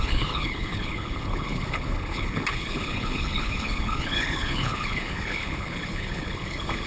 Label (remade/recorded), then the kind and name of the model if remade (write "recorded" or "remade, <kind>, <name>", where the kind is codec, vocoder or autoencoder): remade, codec, HILCodec